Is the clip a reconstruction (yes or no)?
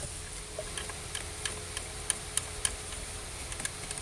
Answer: no